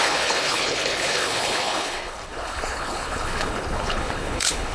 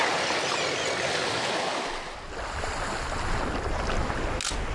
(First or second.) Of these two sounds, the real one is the second